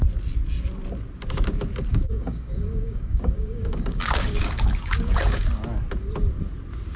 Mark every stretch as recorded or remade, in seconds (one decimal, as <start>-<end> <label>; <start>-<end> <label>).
0.0-1.9 recorded; 1.9-5.5 remade; 5.5-7.0 recorded